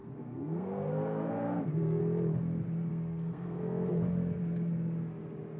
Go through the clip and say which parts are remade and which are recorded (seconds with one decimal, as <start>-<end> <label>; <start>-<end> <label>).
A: 0.0-2.0 remade; 2.0-2.9 recorded; 2.9-3.9 remade; 3.9-5.6 recorded